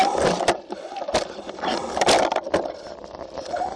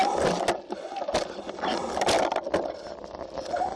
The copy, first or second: first